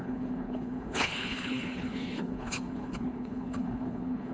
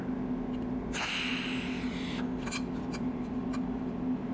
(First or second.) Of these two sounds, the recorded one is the second